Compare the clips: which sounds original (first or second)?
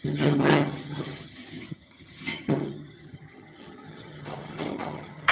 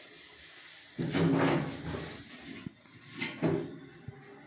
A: second